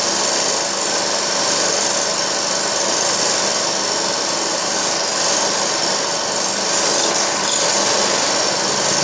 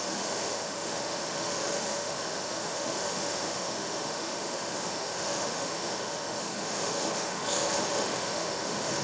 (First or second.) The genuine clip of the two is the first